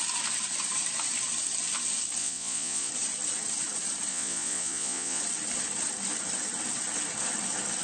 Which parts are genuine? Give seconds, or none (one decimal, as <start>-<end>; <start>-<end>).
0.0-2.2; 2.9-4.1; 5.2-7.8